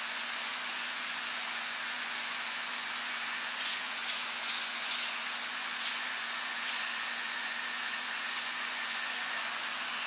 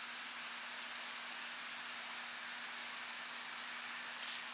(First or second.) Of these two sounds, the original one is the second